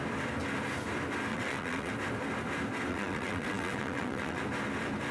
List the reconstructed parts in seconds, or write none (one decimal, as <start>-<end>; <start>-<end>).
1.3-1.9; 2.9-4.4